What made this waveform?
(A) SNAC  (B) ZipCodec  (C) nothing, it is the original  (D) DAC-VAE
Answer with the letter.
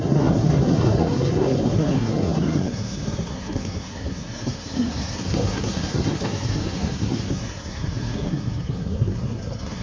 A